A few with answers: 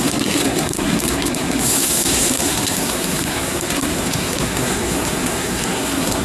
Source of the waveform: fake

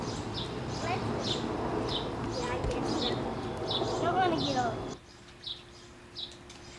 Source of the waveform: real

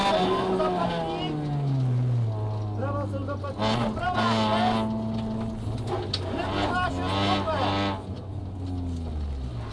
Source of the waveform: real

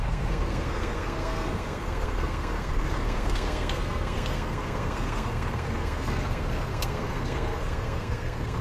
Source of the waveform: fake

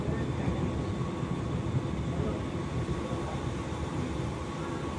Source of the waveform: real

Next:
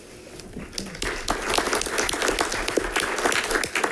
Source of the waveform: real